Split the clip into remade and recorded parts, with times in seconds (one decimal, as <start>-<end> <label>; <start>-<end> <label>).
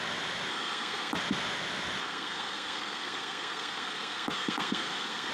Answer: 0.0-0.5 recorded; 0.5-1.1 remade; 1.1-2.0 recorded; 2.0-5.3 remade